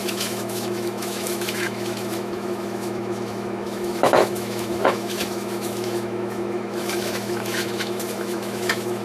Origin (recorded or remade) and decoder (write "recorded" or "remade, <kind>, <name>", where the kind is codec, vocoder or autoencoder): remade, autoencoder, DAC-VAE